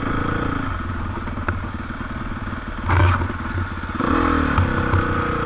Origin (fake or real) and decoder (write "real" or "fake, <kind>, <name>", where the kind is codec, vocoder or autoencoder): real